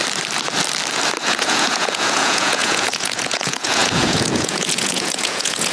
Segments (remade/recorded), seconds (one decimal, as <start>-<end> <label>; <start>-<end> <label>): 0.0-1.2 recorded; 1.2-5.7 remade